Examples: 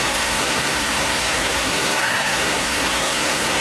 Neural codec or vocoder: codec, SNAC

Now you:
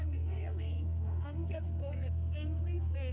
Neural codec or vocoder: codec, SNAC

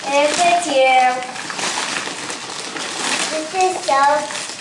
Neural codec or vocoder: none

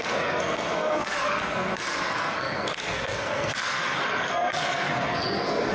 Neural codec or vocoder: codec, SNAC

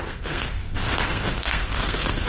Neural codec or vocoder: codec, SNAC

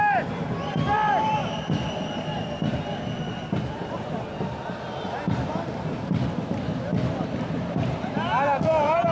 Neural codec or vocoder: none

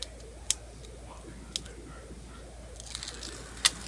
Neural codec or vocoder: none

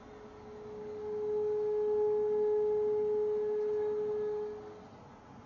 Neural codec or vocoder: none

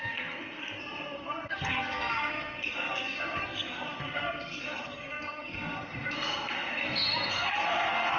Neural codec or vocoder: codec, SNAC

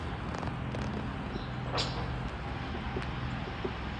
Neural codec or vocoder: none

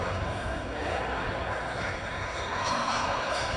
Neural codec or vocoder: codec, SNAC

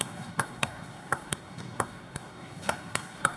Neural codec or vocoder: codec, SNAC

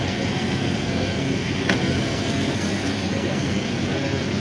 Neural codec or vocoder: codec, SNAC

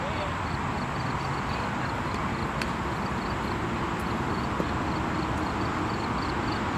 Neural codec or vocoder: none